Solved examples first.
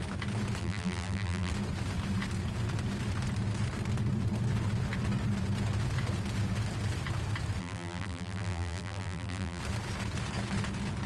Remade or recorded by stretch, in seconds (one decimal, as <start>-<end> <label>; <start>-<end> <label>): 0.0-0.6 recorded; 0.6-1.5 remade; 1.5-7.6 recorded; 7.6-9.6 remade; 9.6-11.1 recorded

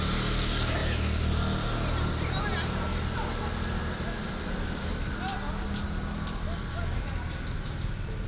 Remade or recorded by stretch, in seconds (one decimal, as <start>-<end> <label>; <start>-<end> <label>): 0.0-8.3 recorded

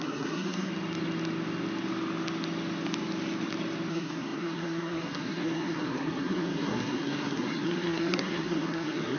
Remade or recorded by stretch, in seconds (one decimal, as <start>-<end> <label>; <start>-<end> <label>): 0.0-0.7 remade; 0.7-3.9 recorded; 3.9-9.2 remade

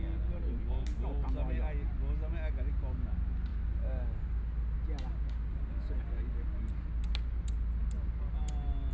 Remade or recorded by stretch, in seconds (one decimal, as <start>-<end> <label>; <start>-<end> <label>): 0.0-8.9 recorded

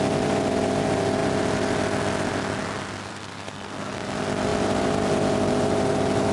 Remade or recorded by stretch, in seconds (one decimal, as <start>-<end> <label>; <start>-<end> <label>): 0.0-3.1 recorded; 3.1-3.9 remade; 3.9-6.3 recorded

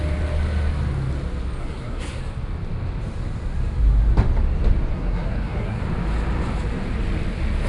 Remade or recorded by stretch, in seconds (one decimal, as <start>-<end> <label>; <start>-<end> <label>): 0.0-1.6 recorded; 1.6-2.2 remade; 2.2-4.9 recorded; 4.9-5.8 remade; 5.8-7.7 recorded

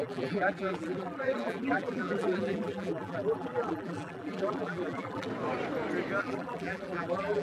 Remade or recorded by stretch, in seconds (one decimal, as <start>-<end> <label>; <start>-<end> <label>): 0.0-5.3 remade; 5.3-6.2 recorded; 6.2-7.4 remade